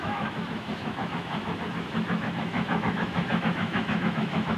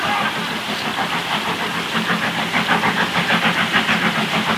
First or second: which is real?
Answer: second